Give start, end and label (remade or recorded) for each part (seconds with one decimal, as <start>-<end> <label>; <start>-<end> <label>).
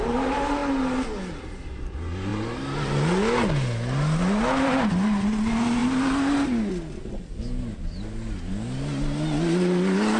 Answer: 0.0-10.2 recorded